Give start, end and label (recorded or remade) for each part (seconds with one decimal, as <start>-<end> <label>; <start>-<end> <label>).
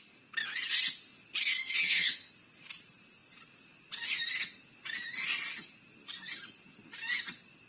0.0-1.6 recorded; 1.6-2.3 remade; 2.3-7.7 recorded